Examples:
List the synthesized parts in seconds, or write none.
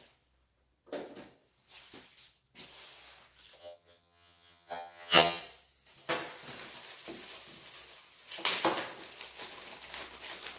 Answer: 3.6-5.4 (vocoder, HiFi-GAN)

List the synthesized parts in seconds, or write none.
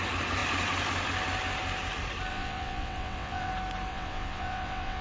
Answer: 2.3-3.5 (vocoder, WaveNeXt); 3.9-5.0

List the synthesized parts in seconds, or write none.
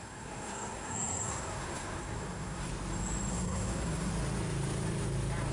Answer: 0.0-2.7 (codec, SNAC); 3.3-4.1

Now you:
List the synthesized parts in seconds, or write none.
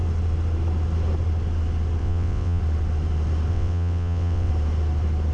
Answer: 2.0-2.6 (vocoder, WaveNeXt); 3.5-4.5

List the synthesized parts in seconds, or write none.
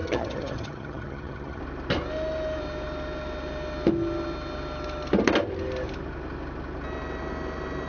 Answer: 0.0-1.6 (vocoder, HiFi-GAN)